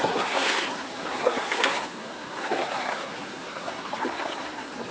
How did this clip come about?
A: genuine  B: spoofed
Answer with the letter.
B